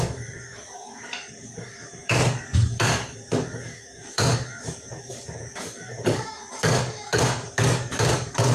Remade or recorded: remade